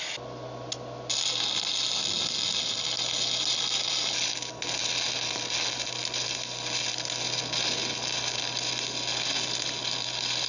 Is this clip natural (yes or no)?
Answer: yes